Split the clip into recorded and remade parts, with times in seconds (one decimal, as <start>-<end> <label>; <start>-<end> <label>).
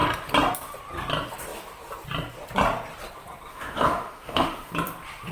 0.0-3.5 recorded; 3.5-4.7 remade; 4.7-5.3 recorded